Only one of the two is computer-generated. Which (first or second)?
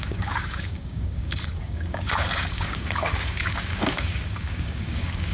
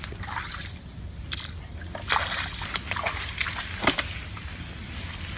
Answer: first